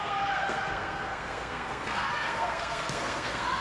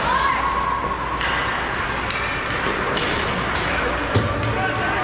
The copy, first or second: first